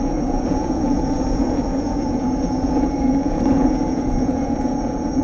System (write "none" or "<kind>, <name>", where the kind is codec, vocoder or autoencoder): vocoder, Vocos